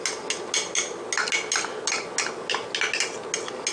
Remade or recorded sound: recorded